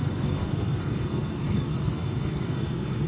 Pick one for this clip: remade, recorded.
remade